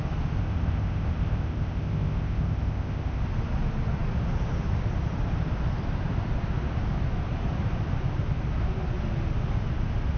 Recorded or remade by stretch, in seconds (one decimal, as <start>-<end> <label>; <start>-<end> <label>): 0.0-0.4 recorded; 0.4-3.2 remade; 3.2-10.2 recorded